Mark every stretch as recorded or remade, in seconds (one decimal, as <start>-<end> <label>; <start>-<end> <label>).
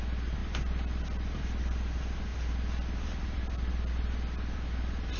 0.0-5.2 recorded